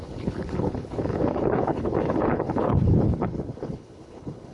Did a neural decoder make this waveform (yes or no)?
yes